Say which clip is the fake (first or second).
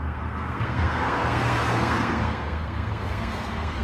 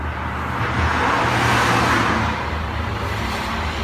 first